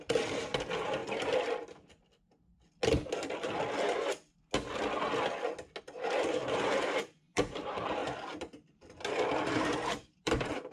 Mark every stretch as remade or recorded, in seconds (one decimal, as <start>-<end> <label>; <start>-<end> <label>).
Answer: 0.0-1.0 remade; 1.0-5.8 recorded; 5.8-8.0 remade; 8.0-9.6 recorded; 9.6-10.7 remade